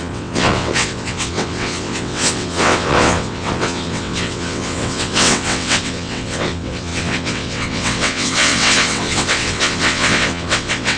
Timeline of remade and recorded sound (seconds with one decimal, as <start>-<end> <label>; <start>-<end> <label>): 0.0-11.0 remade